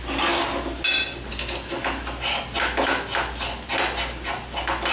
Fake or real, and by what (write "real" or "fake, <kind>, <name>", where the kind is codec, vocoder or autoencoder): real